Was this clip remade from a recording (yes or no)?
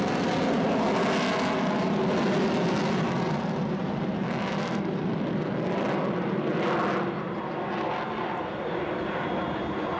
no